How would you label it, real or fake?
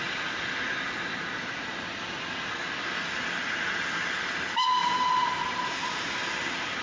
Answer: real